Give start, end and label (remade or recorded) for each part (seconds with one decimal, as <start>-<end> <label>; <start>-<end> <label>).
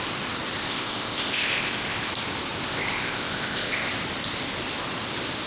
0.0-0.6 recorded; 0.6-2.1 remade; 2.1-2.7 recorded; 2.7-3.9 remade; 3.9-5.5 recorded